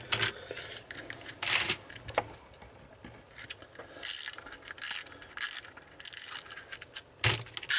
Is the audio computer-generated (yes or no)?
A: no